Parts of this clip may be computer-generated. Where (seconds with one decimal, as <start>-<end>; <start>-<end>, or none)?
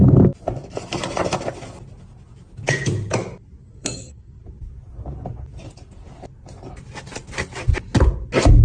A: 3.6-4.4